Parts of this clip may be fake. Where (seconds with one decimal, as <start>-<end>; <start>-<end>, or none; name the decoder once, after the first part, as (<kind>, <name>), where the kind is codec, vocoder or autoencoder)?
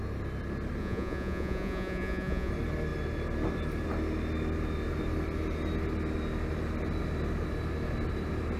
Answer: 0.8-2.5 (vocoder, Vocos)